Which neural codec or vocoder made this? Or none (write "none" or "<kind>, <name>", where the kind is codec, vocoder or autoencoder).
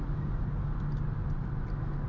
none